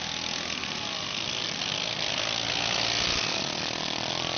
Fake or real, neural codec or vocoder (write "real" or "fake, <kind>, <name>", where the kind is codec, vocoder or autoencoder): real